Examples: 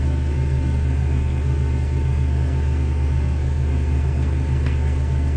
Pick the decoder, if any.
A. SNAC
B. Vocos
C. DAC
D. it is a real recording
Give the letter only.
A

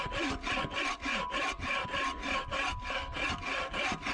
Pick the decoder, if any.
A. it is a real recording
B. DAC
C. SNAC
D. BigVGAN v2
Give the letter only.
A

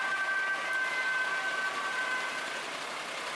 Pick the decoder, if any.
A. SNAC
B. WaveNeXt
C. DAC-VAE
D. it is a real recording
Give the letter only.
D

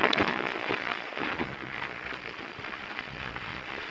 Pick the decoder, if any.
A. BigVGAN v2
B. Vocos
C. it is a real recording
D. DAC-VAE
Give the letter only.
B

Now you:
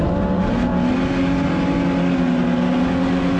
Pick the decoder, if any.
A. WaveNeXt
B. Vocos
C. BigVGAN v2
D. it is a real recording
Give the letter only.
D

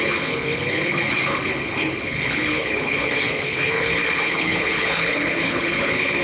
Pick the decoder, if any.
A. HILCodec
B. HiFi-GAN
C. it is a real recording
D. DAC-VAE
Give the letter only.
A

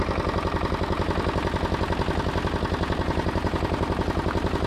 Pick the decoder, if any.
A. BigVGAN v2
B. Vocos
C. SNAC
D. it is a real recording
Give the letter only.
D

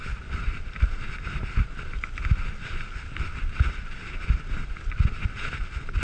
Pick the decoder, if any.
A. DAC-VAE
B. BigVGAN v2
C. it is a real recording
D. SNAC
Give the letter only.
C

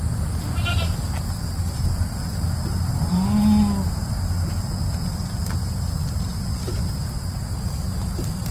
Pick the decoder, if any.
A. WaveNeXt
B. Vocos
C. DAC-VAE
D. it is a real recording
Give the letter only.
D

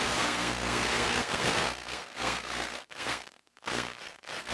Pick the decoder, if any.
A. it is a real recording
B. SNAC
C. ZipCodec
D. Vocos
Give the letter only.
B